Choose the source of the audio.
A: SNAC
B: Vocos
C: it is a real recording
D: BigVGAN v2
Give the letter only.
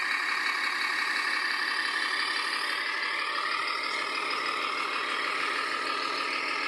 C